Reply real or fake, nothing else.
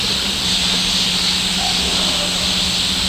real